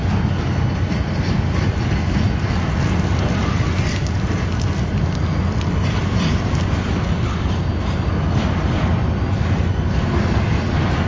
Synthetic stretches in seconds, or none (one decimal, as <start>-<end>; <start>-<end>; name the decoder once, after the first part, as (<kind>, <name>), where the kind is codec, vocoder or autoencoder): none